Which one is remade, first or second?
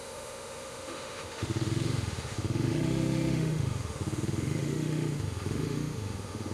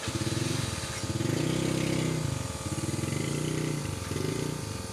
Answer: first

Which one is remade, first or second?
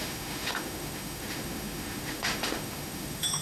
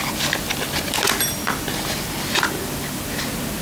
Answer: first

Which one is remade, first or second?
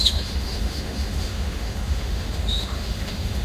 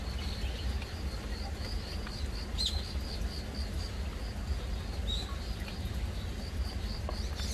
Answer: first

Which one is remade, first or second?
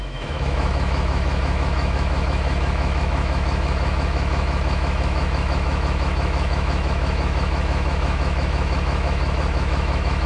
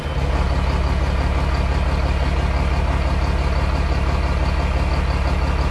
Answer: first